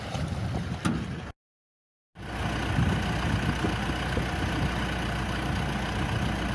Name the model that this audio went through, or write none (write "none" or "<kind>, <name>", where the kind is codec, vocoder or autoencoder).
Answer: none